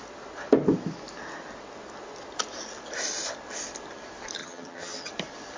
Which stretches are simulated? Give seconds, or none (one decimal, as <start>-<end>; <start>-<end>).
4.4-5.1